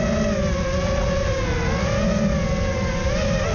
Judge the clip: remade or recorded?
recorded